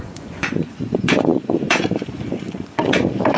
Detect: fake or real fake